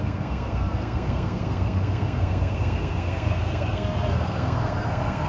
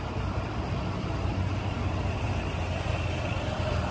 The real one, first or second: second